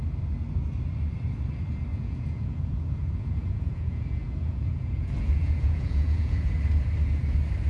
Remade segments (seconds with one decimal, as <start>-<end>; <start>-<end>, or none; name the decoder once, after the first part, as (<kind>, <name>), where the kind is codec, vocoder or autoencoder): 1.9-6.5 (vocoder, Vocos)